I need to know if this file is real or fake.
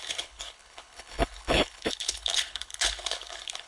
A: fake